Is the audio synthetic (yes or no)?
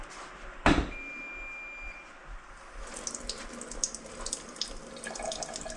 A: no